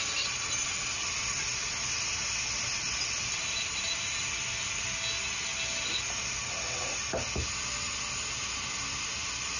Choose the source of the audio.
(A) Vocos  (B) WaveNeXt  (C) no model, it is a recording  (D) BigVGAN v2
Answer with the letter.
C